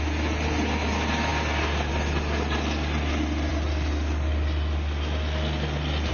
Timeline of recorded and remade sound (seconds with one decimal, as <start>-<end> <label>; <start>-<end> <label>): 0.0-6.1 recorded